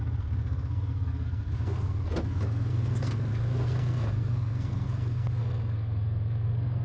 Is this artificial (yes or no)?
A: yes